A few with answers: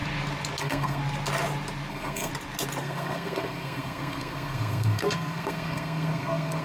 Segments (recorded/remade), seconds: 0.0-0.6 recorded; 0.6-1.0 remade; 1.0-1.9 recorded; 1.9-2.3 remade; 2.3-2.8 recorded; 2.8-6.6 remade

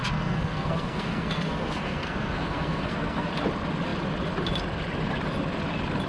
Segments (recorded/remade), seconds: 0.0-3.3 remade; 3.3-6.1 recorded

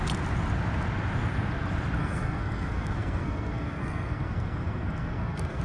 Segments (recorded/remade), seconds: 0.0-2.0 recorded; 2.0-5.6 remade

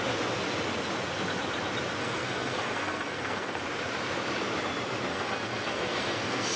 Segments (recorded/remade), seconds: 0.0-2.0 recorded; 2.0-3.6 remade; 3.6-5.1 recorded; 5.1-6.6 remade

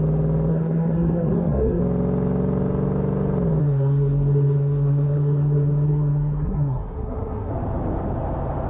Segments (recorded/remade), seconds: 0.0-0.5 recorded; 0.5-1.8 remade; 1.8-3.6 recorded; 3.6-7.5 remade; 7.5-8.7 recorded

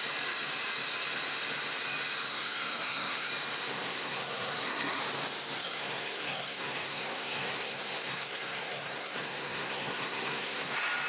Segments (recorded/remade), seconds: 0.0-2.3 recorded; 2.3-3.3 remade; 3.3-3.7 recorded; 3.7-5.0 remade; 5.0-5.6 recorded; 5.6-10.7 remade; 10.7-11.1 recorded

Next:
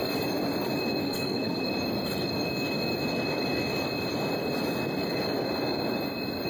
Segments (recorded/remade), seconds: 0.0-1.0 recorded; 1.0-1.6 remade; 1.6-6.5 recorded

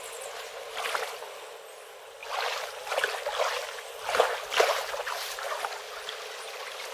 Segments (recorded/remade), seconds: 0.0-6.9 recorded